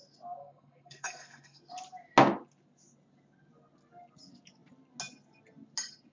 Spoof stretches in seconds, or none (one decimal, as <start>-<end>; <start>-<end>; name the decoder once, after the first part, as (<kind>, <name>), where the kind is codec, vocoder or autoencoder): 0.4-1.6 (codec, SNAC)